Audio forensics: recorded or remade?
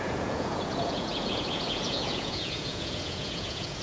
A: remade